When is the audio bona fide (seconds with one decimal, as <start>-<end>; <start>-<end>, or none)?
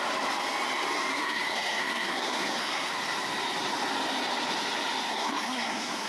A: 0.0-1.1; 2.9-5.1